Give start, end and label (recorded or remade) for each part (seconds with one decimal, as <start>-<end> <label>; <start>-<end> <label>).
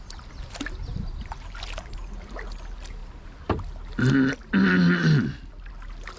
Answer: 0.0-6.2 recorded